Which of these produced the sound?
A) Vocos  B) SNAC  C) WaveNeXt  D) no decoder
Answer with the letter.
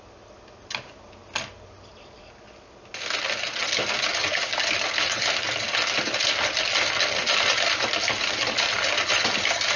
D